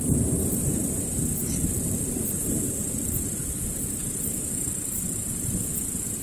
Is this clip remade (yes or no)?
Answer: yes